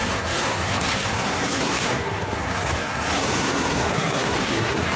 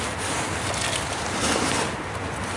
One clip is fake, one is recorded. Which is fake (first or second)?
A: first